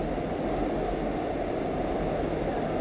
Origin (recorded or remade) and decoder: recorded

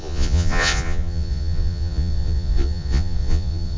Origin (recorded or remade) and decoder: remade, vocoder, Vocos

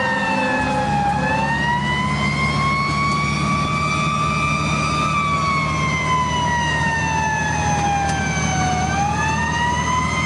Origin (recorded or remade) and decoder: recorded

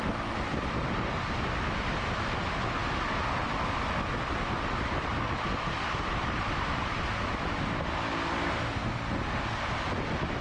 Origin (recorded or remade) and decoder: recorded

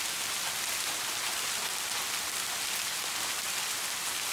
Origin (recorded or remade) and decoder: recorded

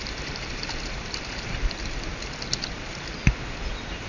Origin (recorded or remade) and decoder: recorded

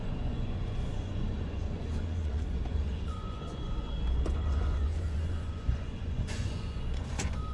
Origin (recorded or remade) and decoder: remade, vocoder, Vocos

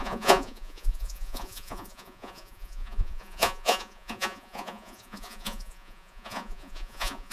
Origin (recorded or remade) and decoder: remade, vocoder, Vocos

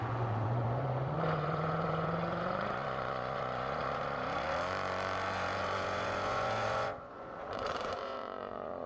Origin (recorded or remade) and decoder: remade, vocoder, Vocos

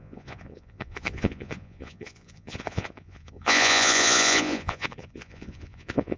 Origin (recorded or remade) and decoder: remade, vocoder, Vocos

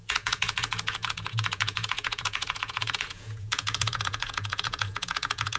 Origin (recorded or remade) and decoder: remade, vocoder, Vocos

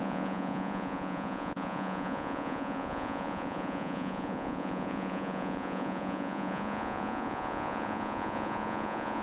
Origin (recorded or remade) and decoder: remade, vocoder, Vocos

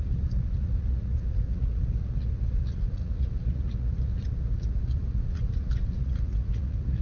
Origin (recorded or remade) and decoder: remade, vocoder, Vocos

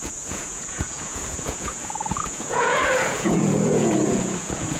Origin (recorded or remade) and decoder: remade, vocoder, Vocos